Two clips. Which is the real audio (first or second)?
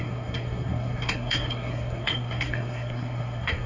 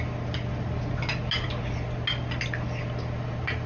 second